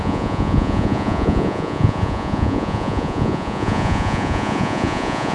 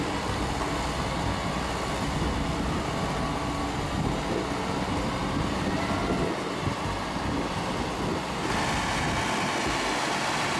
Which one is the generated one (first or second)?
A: first